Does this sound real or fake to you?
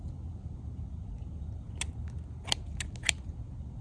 real